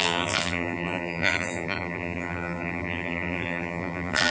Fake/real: fake